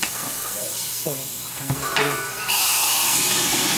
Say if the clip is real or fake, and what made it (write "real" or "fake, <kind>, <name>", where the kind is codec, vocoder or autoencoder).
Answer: fake, codec, SNAC